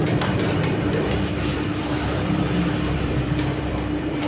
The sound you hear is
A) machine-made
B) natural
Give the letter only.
A